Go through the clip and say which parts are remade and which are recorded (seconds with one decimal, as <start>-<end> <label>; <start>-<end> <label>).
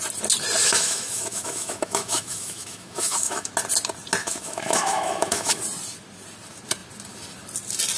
0.0-0.6 recorded; 0.6-3.5 remade; 3.5-4.2 recorded; 4.2-5.6 remade; 5.6-8.0 recorded